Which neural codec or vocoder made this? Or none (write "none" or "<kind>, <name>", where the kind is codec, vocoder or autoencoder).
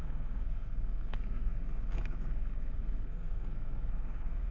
codec, SNAC